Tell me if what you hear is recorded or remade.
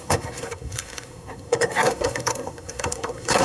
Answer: remade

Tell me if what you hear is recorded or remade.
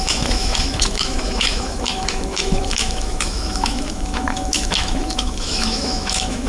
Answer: remade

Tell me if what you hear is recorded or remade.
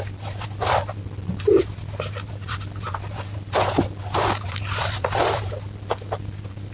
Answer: recorded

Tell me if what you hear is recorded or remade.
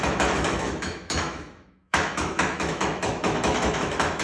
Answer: remade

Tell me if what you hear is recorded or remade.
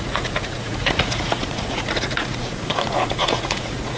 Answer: remade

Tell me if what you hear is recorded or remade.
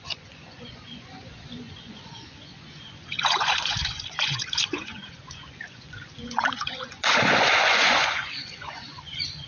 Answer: remade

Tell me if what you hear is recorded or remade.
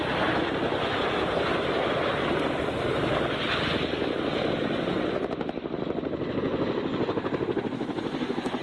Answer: recorded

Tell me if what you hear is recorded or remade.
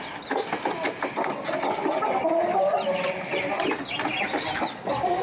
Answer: recorded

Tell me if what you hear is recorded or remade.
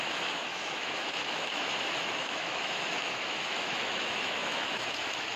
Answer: remade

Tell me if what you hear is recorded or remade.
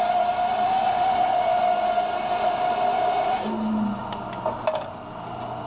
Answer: recorded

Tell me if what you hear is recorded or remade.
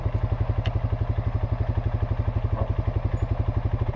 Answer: recorded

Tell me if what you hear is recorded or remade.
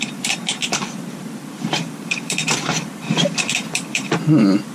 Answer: remade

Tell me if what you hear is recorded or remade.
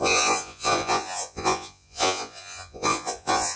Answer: remade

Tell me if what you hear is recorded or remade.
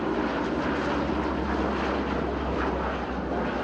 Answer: recorded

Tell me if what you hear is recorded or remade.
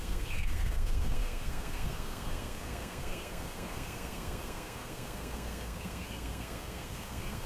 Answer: remade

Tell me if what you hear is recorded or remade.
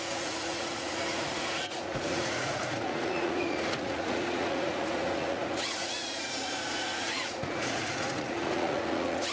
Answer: remade